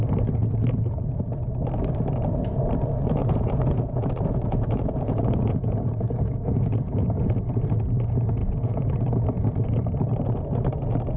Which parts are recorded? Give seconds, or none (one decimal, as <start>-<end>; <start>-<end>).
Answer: 0.0-3.2; 7.5-8.4; 8.9-11.2